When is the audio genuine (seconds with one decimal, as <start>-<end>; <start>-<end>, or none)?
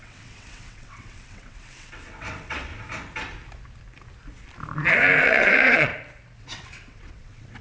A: 2.7-5.2; 5.9-6.4